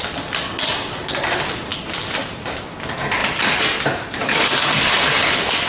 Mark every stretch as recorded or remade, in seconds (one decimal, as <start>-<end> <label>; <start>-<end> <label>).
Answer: 0.0-5.7 recorded